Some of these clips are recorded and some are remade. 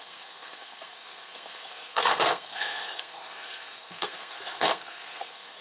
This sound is remade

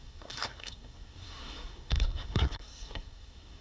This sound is remade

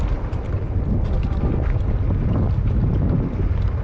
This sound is recorded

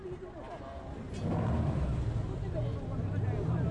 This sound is recorded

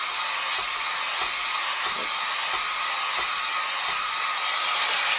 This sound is recorded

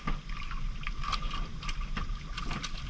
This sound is recorded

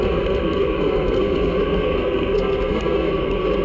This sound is remade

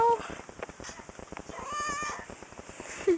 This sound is recorded